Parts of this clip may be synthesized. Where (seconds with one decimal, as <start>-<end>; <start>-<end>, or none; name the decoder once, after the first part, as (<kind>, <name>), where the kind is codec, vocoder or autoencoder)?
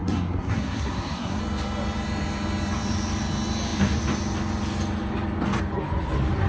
0.0-1.4 (codec, SNAC)